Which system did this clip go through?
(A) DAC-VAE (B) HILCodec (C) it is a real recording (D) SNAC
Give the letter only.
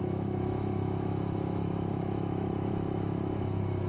A